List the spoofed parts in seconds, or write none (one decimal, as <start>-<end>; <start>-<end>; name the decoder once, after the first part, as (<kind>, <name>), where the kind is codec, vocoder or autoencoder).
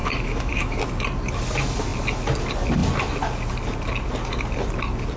0.0-0.8 (autoencoder, DAC-VAE)